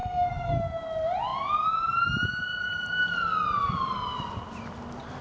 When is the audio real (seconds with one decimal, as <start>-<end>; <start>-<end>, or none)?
0.6-5.2

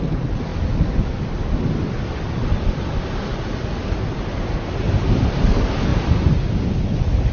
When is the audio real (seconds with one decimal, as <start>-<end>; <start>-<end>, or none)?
0.0-7.3

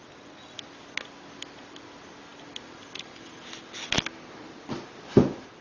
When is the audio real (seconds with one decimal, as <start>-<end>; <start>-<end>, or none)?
0.0-5.6